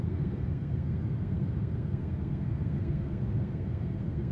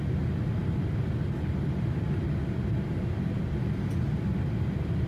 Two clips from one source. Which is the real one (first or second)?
second